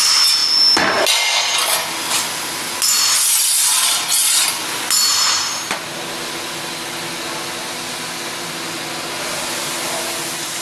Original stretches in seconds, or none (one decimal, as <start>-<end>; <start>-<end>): 0.0-10.6